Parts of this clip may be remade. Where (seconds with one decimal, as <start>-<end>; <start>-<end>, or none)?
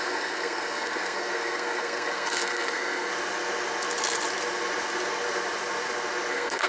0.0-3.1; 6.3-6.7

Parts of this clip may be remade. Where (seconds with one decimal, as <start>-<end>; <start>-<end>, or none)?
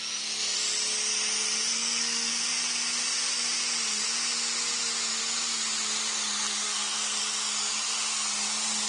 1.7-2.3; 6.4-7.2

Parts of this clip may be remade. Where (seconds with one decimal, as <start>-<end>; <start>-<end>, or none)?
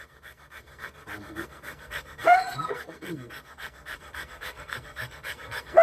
0.0-5.8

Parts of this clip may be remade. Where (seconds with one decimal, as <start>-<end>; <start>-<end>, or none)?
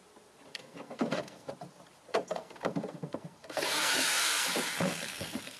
0.5-1.5; 2.1-5.6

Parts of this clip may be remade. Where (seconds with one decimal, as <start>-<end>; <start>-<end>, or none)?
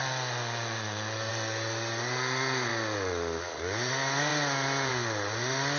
none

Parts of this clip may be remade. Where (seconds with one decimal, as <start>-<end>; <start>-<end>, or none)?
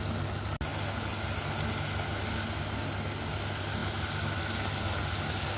none